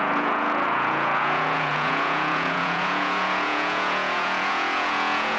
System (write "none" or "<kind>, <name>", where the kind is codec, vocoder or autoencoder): vocoder, Vocos